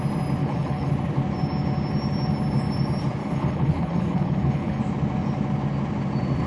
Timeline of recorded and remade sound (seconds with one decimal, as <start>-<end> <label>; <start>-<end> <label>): 0.0-0.4 recorded; 0.4-0.9 remade; 0.9-3.2 recorded; 3.2-4.8 remade; 4.8-6.5 recorded